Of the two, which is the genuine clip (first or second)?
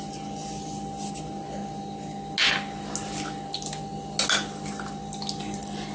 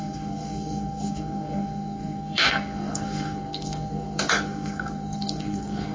first